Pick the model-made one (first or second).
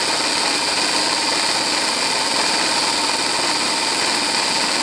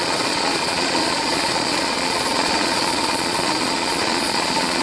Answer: second